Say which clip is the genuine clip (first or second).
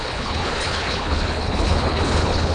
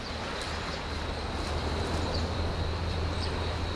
second